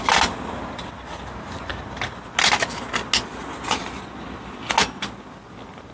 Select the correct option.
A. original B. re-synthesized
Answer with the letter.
A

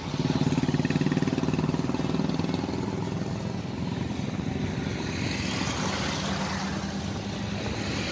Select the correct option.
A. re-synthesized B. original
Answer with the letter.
B